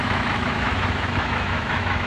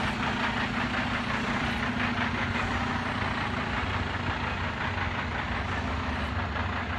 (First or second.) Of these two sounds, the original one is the second